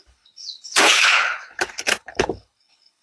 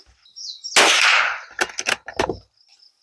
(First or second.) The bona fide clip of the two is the second